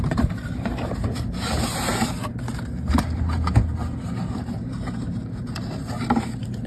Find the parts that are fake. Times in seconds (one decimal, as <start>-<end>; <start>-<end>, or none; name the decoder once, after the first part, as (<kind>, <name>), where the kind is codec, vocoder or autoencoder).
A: 0.0-6.7 (vocoder, BigVGAN v2)